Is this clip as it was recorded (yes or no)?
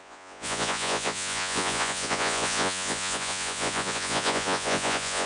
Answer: no